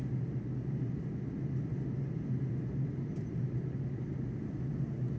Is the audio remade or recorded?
recorded